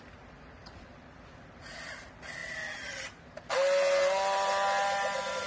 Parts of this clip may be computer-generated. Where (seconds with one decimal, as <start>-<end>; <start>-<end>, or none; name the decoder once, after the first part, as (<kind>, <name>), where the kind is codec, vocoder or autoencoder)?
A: 0.6-1.9 (vocoder, BigVGAN v2)